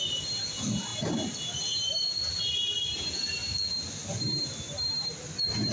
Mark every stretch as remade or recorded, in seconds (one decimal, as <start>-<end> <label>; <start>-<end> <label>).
0.0-5.7 recorded